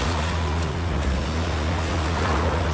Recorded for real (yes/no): no